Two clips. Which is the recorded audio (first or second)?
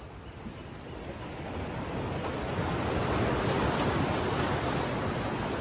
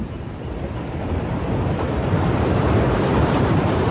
first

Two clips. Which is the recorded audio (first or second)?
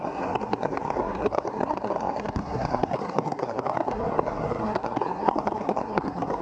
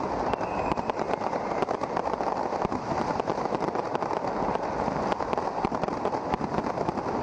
second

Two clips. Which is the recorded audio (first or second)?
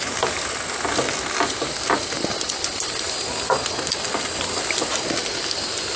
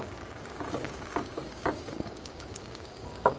first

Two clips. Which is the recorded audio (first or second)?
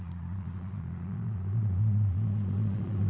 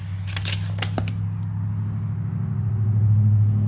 second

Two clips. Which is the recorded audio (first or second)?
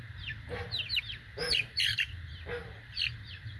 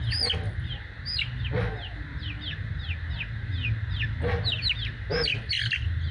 second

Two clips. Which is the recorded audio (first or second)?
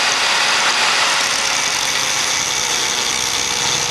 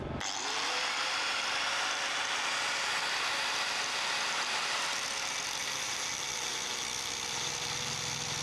first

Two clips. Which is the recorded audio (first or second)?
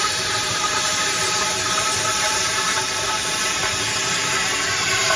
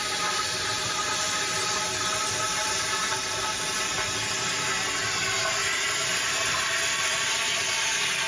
second